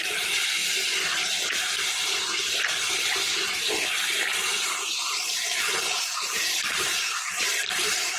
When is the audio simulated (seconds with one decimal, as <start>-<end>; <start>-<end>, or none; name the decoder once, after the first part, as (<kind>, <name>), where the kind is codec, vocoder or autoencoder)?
0.0-0.6 (vocoder, BigVGAN v2); 4.9-8.2